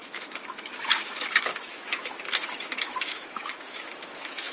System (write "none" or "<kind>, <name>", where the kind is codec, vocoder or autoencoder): autoencoder, DAC-VAE